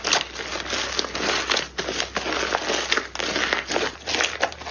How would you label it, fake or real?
real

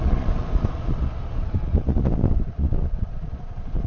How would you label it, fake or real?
fake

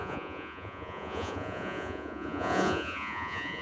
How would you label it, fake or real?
fake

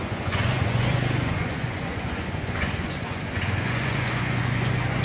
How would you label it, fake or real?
fake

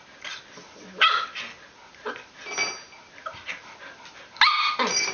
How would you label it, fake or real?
real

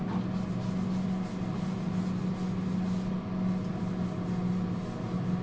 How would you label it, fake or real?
real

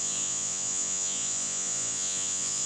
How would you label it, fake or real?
fake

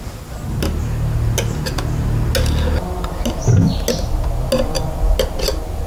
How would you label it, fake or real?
real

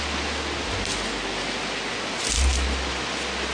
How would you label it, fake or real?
real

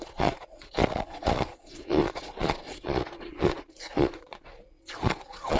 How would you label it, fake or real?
fake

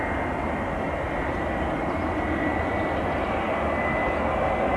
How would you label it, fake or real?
real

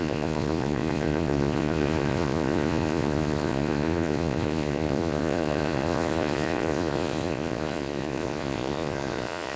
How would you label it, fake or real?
fake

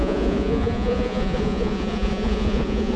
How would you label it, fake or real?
fake